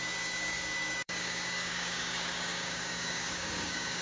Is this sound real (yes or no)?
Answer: no